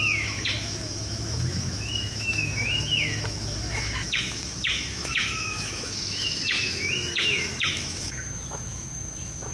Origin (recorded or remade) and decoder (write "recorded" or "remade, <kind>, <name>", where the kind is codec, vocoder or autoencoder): remade, autoencoder, DAC-VAE